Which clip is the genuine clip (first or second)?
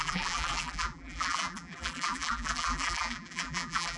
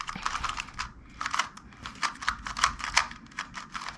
second